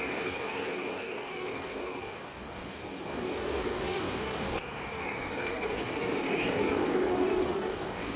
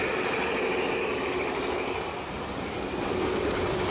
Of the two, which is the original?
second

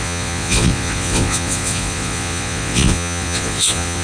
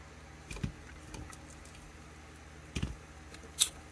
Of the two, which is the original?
second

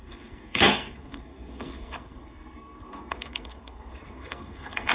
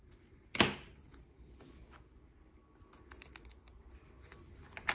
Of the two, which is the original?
second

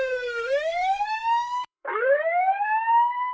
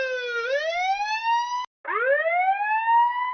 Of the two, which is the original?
second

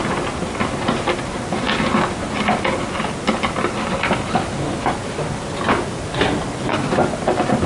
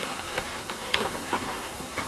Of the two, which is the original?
first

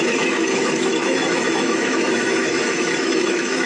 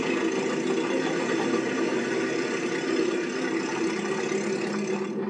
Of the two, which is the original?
second